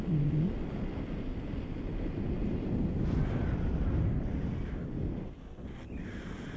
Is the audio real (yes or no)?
yes